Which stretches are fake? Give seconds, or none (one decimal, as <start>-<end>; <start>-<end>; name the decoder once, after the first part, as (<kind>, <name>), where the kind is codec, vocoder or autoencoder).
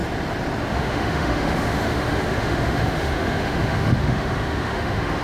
0.7-5.2 (autoencoder, DAC-VAE)